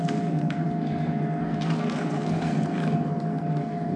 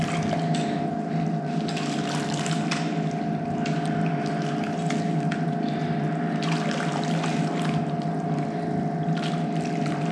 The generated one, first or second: first